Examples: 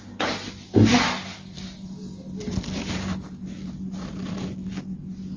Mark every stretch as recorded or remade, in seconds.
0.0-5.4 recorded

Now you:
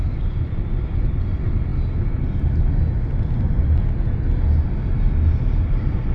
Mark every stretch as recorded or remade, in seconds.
0.0-6.1 recorded